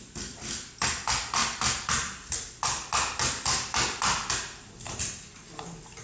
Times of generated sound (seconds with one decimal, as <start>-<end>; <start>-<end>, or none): none